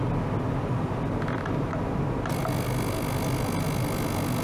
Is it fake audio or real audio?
real